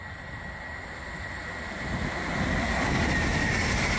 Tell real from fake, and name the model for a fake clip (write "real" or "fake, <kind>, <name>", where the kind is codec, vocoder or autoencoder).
real